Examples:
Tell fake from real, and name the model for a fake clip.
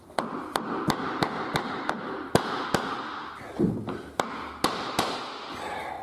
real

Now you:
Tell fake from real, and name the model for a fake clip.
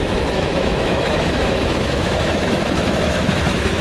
fake, autoencoder, DAC-VAE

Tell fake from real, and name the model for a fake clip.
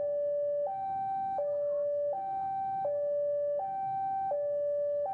fake, autoencoder, DAC-VAE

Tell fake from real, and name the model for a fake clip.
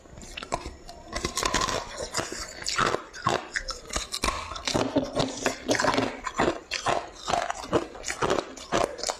real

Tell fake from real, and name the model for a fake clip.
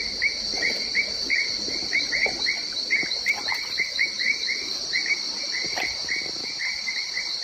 fake, vocoder, BigVGAN v2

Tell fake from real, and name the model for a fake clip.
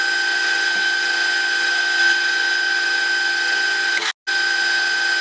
real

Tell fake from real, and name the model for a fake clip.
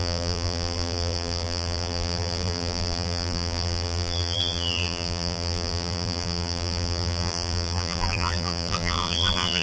fake, vocoder, BigVGAN v2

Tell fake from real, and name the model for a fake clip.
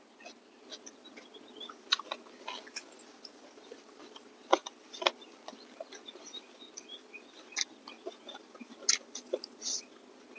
real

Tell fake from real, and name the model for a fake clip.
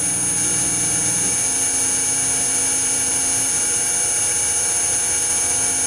real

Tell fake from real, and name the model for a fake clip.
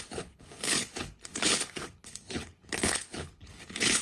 fake, codec, HILCodec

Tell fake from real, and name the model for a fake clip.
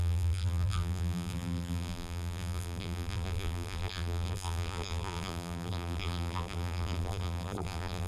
fake, vocoder, BigVGAN v2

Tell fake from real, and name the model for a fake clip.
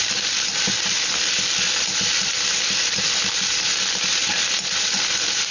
real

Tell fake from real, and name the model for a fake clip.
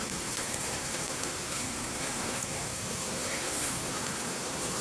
fake, codec, SNAC